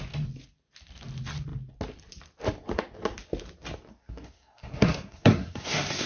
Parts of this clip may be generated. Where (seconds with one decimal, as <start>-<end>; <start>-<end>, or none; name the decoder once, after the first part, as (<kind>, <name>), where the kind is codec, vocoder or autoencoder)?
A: 4.0-6.1 (codec, SNAC)